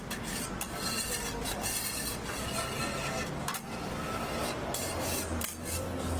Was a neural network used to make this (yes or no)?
no